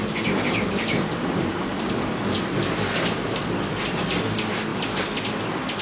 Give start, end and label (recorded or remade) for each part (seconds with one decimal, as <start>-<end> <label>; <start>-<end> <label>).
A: 0.0-5.8 recorded